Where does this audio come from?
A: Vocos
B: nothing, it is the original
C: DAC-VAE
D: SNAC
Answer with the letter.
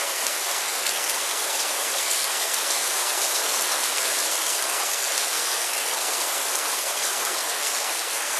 D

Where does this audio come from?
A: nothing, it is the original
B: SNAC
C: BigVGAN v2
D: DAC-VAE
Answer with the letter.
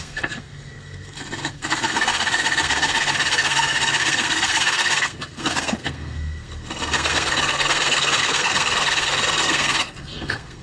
B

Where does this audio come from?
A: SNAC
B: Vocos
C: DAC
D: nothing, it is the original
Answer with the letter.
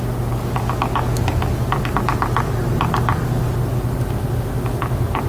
D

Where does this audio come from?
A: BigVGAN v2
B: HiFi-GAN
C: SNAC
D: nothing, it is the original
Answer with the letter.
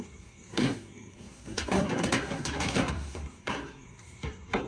C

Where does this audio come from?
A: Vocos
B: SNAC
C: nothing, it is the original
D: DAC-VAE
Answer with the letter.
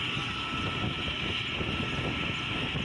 C